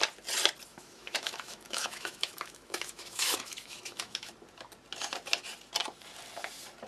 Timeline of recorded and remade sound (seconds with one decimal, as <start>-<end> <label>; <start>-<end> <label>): 0.0-0.7 recorded; 0.7-4.3 remade; 4.3-6.9 recorded